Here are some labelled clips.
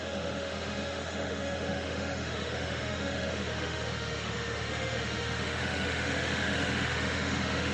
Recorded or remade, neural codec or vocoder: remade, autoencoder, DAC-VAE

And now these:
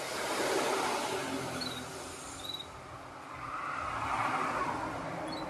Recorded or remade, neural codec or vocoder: recorded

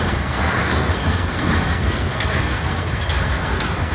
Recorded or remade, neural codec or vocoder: remade, codec, SNAC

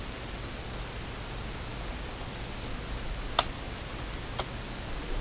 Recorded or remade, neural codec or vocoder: recorded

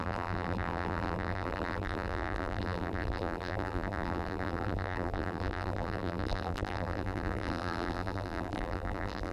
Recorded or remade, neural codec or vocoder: remade, vocoder, BigVGAN v2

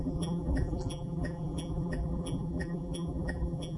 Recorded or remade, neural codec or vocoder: remade, vocoder, BigVGAN v2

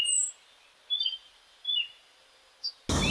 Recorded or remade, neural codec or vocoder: recorded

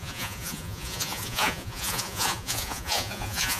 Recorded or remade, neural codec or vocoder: remade, vocoder, Vocos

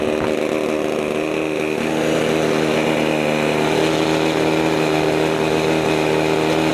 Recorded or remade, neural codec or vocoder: recorded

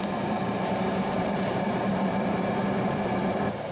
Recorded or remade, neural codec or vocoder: remade, vocoder, BigVGAN v2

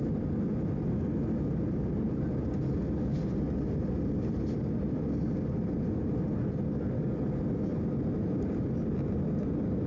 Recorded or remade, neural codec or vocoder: recorded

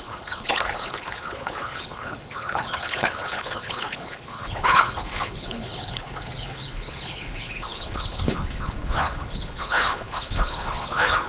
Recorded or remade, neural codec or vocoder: remade, codec, HILCodec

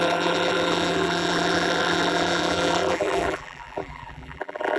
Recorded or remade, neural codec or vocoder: remade, vocoder, BigVGAN v2